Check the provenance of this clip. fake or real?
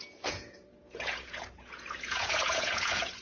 fake